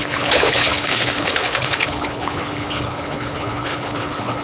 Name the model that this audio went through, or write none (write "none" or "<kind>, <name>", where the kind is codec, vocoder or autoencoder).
codec, HILCodec